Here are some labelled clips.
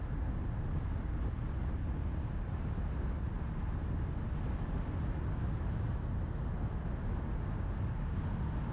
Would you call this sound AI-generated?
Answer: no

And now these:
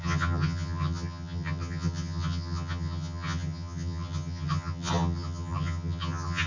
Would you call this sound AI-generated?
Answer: yes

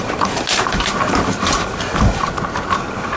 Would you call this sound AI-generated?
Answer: yes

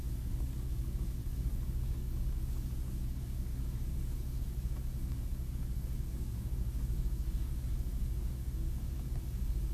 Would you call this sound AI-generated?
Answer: yes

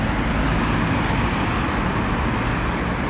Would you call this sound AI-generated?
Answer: no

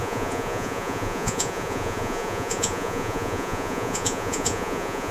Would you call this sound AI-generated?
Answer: yes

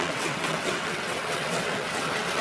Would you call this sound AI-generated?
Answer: yes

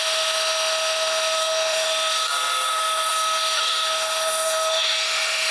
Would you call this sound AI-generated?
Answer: yes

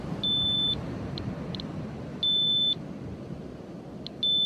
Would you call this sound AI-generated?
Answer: no